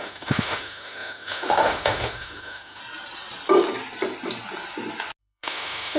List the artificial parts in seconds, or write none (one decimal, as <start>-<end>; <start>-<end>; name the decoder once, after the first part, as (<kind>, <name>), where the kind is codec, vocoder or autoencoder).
0.0-2.8 (autoencoder, DAC-VAE); 5.2-6.0